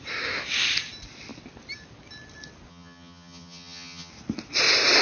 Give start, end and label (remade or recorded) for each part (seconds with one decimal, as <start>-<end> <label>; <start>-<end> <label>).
0.0-2.7 recorded; 2.7-4.1 remade; 4.1-5.0 recorded